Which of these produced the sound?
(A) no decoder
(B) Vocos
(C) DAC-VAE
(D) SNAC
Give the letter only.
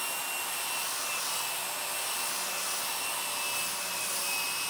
A